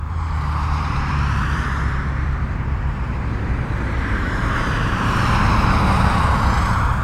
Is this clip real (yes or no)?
no